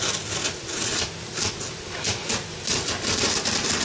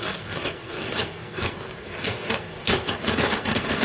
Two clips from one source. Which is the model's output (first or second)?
second